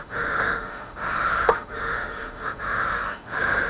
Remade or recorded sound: remade